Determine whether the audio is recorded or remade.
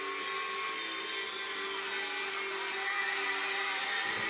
recorded